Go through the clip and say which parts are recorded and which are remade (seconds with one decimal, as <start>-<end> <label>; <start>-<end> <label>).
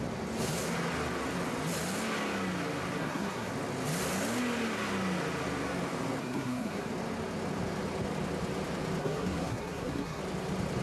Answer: 0.0-3.0 recorded; 3.0-3.5 remade; 3.5-6.2 recorded; 6.2-6.9 remade; 6.9-9.0 recorded; 9.0-10.2 remade; 10.2-10.8 recorded